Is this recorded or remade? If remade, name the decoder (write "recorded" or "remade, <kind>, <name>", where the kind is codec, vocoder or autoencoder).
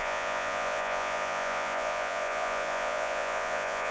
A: remade, vocoder, Vocos